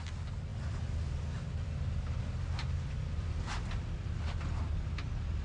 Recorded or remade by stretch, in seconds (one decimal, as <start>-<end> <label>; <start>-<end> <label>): 0.0-5.4 recorded